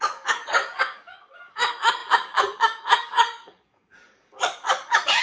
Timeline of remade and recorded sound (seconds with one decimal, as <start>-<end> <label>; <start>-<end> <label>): 0.0-5.2 remade